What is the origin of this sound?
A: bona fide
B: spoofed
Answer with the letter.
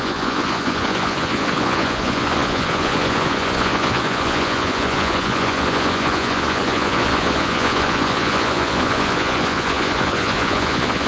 B